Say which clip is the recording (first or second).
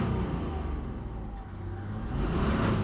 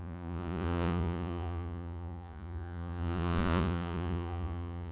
first